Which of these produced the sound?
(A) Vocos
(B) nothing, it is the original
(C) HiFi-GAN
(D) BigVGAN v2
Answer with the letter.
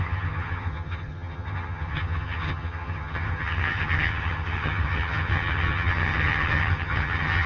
C